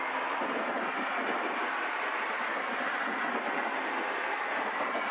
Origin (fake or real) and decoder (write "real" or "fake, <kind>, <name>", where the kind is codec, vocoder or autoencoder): real